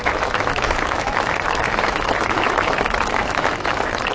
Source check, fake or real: fake